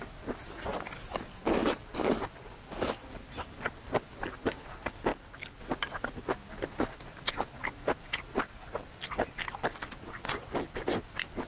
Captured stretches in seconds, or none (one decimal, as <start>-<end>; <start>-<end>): 0.0-11.5